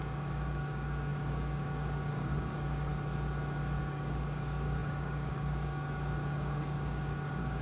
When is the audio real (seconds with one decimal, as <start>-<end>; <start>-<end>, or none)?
2.9-3.8